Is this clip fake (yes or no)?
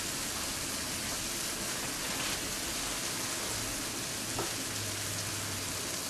no